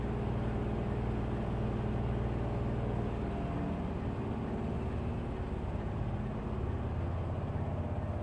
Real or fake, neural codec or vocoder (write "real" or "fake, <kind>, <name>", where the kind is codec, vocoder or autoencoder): real